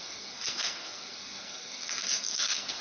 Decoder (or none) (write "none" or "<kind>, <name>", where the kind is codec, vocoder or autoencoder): codec, SNAC